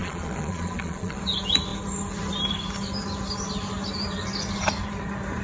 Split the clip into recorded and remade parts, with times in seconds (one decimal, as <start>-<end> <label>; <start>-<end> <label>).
0.0-1.2 remade; 1.2-5.4 recorded